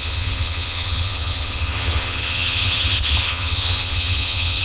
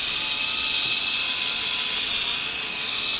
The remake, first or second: first